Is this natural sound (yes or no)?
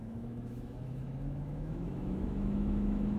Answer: no